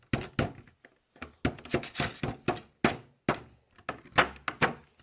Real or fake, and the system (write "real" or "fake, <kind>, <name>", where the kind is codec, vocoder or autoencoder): real